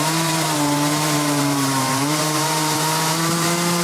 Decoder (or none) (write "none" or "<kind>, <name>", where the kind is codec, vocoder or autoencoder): vocoder, BigVGAN v2